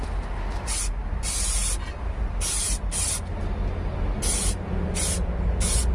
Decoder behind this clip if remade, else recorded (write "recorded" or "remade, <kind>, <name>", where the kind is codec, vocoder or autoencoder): recorded